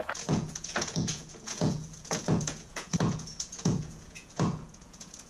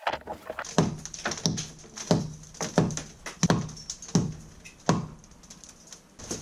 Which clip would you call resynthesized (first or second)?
first